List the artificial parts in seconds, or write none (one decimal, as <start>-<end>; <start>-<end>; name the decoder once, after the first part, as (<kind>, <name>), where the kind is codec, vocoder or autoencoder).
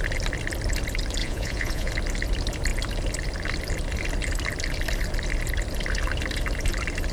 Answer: 1.2-1.9 (vocoder, Vocos)